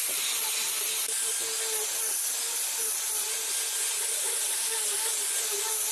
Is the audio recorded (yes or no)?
yes